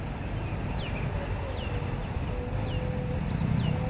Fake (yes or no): no